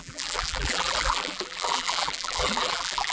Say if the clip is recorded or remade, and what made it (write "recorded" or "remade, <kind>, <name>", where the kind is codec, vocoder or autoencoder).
remade, vocoder, BigVGAN v2